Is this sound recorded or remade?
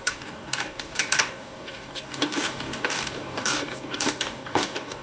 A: remade